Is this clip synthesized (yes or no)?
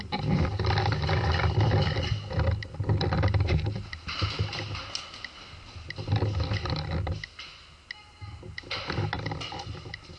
no